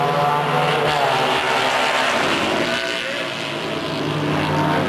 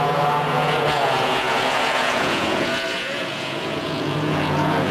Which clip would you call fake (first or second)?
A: second